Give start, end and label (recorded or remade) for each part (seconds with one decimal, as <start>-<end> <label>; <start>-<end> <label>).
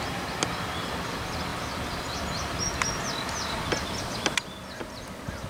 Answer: 0.0-5.5 recorded